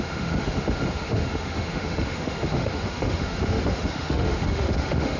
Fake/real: fake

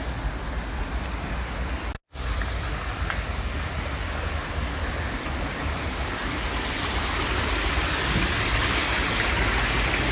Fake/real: real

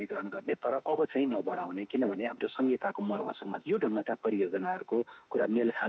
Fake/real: fake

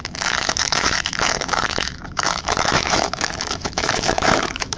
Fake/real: fake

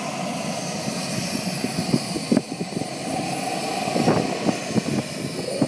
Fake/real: real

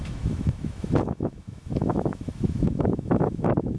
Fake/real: fake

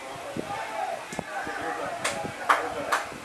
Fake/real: real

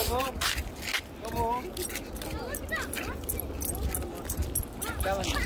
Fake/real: real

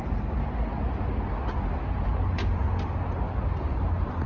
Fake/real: real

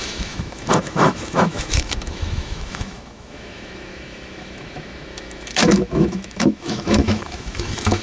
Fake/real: fake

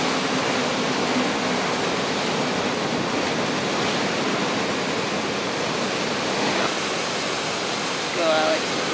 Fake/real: real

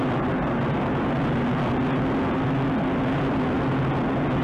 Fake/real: real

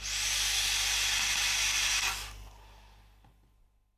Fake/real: real